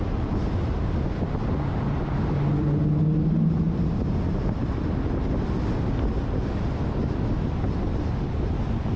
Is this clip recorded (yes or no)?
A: yes